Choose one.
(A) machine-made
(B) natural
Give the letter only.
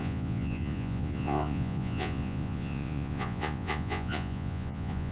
A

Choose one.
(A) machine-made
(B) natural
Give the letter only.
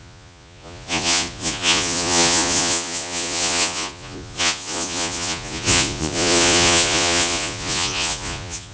A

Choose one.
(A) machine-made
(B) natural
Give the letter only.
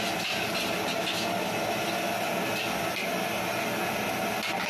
B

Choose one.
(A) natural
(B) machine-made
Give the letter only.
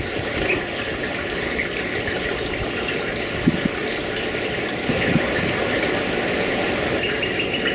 A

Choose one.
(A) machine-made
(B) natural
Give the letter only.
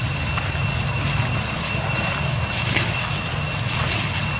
B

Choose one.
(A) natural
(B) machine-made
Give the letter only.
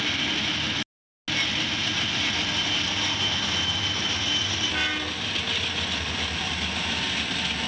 A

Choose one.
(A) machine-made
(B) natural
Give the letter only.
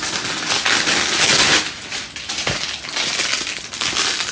B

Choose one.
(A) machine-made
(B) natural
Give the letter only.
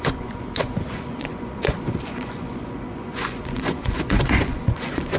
A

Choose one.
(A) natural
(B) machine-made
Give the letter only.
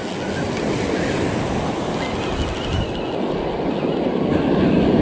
A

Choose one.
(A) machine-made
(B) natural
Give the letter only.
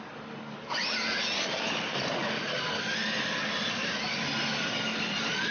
B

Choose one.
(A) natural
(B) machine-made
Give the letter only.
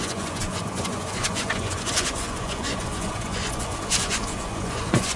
B